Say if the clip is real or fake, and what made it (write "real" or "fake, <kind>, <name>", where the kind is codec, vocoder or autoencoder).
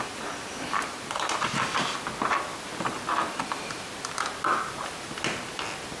real